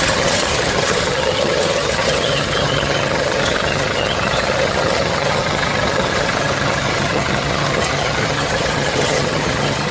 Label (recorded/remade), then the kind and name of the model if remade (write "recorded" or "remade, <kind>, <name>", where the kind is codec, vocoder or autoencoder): remade, vocoder, HiFi-GAN